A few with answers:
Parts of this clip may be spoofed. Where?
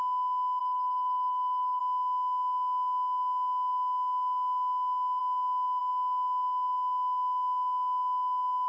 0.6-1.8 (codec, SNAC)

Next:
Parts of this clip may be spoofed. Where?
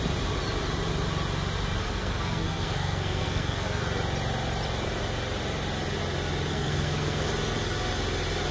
1.8-3.8 (codec, SNAC); 6.5-7.3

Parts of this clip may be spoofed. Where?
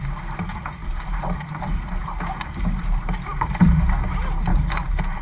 0.8-3.9 (vocoder, BigVGAN v2); 4.5-5.2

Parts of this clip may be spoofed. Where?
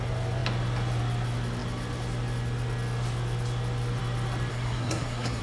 4.5-5.4 (codec, SNAC)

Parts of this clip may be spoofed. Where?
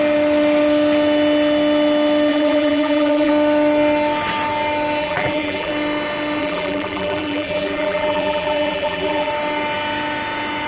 2.3-3.3 (vocoder, BigVGAN v2); 5.0-5.7; 6.4-9.3